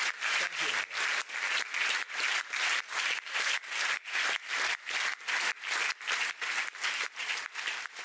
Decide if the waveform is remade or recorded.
recorded